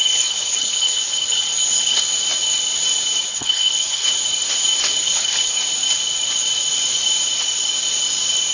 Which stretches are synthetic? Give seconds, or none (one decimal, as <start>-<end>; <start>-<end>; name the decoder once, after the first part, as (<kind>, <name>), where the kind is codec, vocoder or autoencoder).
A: 0.0-2.0 (codec, HILCodec); 3.3-4.1; 5.0-5.6